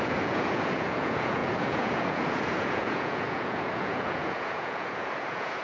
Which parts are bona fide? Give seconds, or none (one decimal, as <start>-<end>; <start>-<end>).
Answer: none